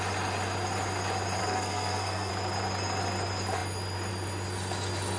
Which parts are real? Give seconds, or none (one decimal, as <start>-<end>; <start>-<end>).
0.0-1.4; 2.3-5.2